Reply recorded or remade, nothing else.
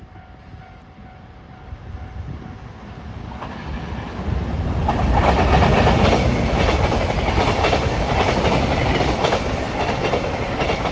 recorded